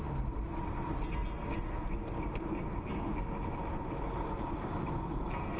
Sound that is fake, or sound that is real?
real